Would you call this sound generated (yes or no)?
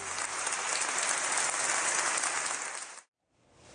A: no